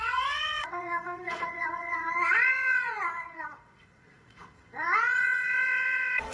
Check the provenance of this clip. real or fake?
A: fake